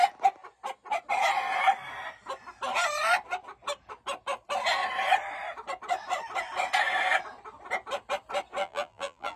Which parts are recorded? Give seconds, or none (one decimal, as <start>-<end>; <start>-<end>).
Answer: 0.0-8.6